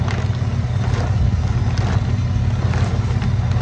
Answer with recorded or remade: recorded